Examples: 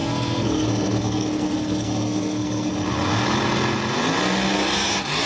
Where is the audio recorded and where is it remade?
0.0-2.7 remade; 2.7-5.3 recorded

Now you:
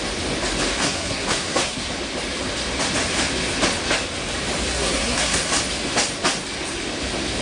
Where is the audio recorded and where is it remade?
0.0-0.8 recorded; 0.8-1.9 remade; 1.9-4.7 recorded; 4.7-5.5 remade; 5.5-7.4 recorded

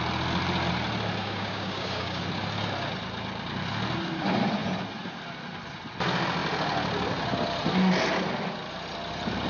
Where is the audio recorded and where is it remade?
0.0-1.2 recorded; 1.2-2.2 remade; 2.2-9.5 recorded

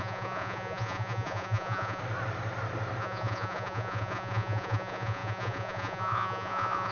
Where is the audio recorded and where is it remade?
0.0-2.0 remade; 2.0-3.0 recorded; 3.0-6.9 remade

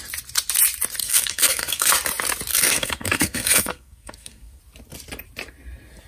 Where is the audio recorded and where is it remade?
0.0-1.0 recorded; 1.0-1.9 remade; 1.9-2.5 recorded; 2.5-4.6 remade; 4.6-6.1 recorded

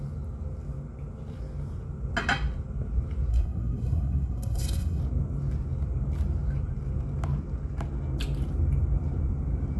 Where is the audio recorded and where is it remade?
0.0-3.3 recorded; 3.3-5.0 remade; 5.0-9.8 recorded

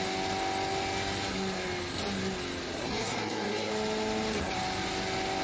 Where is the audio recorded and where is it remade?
0.0-2.8 recorded; 2.8-3.7 remade; 3.7-5.4 recorded

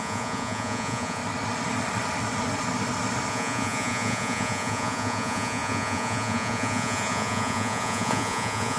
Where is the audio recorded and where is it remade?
0.0-1.2 remade; 1.2-3.3 recorded; 3.3-8.8 remade